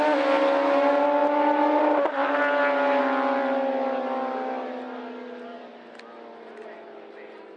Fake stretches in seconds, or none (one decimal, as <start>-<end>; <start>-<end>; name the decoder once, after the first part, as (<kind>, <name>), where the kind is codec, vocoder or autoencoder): none